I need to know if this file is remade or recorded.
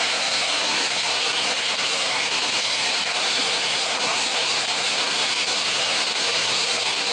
remade